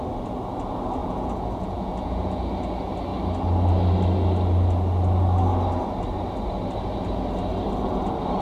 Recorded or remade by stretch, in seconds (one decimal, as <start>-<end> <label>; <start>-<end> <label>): 0.0-1.0 recorded; 1.0-2.5 remade; 2.5-8.4 recorded